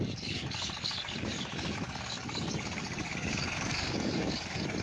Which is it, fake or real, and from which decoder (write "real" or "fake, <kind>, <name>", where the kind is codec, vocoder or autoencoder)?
fake, codec, DAC